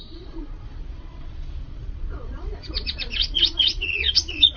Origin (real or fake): fake